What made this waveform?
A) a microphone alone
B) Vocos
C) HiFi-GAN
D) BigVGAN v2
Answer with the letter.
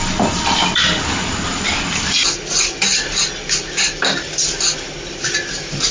D